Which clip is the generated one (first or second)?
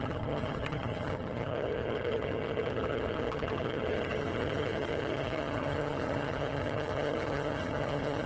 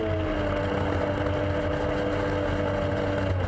first